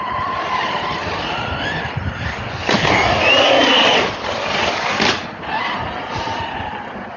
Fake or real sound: real